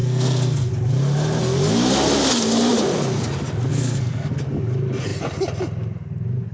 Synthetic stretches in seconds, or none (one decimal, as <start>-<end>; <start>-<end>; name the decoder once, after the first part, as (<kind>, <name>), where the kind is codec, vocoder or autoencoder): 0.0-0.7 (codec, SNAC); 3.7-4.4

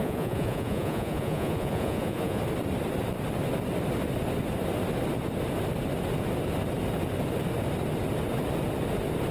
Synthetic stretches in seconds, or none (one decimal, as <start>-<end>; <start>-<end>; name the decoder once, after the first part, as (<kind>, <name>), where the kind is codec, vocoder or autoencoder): 0.0-2.4 (vocoder, Vocos)

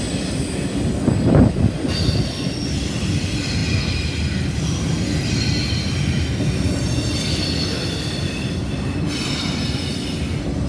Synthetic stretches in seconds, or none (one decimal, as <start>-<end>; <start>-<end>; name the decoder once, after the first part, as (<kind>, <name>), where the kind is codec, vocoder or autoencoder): none

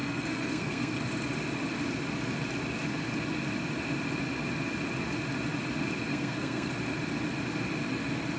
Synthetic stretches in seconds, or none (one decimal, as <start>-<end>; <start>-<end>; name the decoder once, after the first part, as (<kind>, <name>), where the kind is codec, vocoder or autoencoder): 0.0-1.0 (codec, SNAC); 6.1-6.7

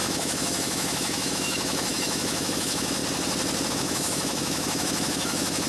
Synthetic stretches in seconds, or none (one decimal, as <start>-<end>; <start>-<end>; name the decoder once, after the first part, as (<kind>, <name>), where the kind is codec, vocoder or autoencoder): 0.0-3.0 (autoencoder, DAC-VAE); 3.7-5.7